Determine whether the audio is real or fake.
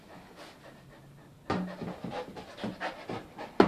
real